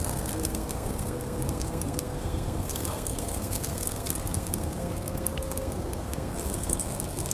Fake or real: fake